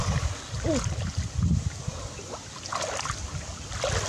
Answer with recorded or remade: recorded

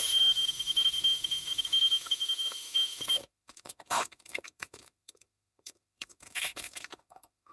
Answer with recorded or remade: remade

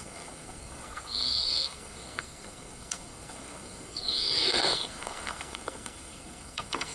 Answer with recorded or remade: remade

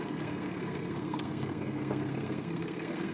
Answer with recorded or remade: remade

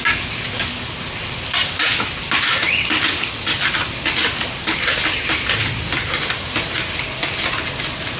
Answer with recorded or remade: recorded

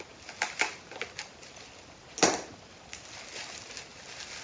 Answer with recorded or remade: recorded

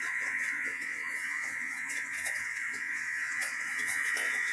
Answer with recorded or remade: remade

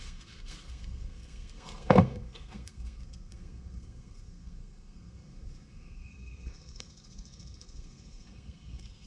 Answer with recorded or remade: remade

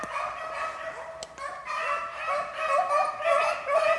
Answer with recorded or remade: recorded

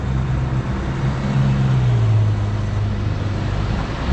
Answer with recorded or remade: recorded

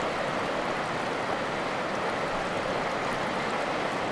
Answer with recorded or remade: recorded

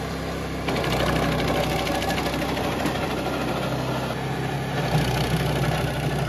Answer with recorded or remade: recorded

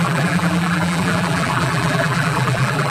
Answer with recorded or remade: remade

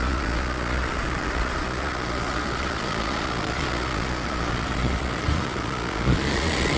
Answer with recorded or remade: remade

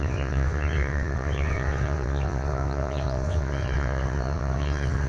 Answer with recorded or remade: remade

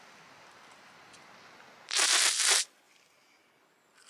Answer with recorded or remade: recorded